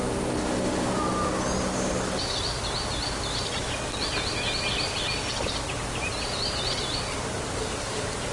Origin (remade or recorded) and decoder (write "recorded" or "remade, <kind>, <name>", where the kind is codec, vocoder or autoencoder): recorded